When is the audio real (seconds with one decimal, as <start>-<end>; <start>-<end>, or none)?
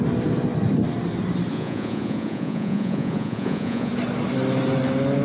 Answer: 0.0-1.5; 3.9-5.2